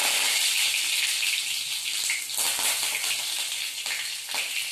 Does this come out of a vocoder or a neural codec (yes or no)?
no